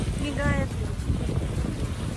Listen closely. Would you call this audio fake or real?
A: real